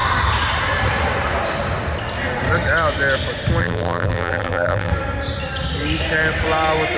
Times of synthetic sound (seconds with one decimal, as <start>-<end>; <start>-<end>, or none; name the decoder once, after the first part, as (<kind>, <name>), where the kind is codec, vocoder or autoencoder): 3.6-4.9 (vocoder, BigVGAN v2)